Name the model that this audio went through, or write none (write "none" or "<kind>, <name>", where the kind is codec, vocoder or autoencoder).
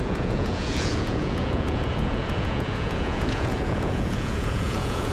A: vocoder, Vocos